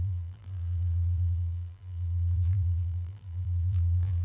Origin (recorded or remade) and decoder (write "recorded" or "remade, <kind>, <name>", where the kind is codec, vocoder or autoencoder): remade, vocoder, BigVGAN v2